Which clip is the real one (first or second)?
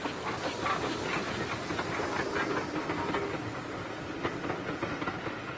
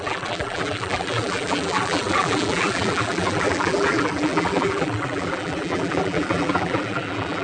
first